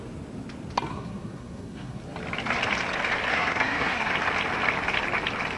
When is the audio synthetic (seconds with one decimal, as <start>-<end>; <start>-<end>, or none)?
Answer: 0.9-2.0; 3.3-4.1